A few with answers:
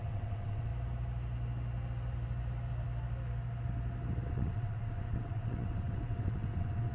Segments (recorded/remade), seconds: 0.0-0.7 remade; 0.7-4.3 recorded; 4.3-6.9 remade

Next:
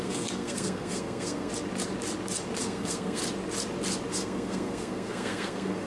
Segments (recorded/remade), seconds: 0.0-1.5 remade; 1.5-2.6 recorded; 2.6-3.2 remade; 3.2-4.1 recorded; 4.1-5.9 remade

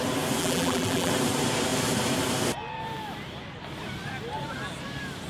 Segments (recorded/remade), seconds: 0.0-0.4 recorded; 0.4-1.1 remade; 1.1-5.3 recorded

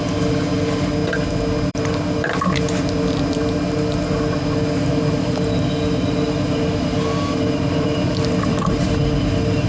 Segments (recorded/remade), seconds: 0.0-1.0 remade; 1.0-1.7 recorded; 1.7-9.7 remade

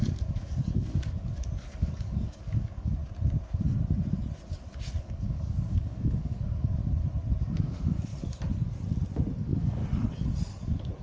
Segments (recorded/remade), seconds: 0.0-3.0 remade; 3.0-5.0 recorded; 5.0-6.8 remade; 6.8-7.4 recorded; 7.4-8.1 remade; 8.1-9.4 recorded; 9.4-9.8 remade; 9.8-11.0 recorded